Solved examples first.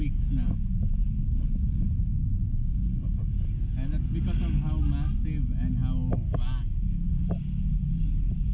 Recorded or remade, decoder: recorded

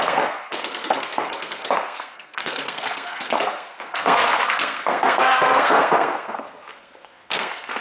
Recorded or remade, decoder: remade, codec, SNAC